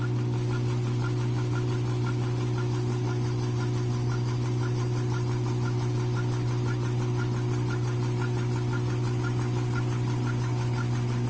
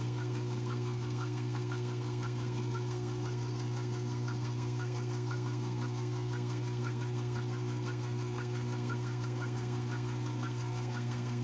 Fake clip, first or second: second